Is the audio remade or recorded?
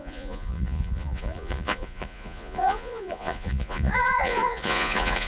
remade